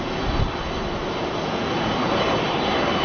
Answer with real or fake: real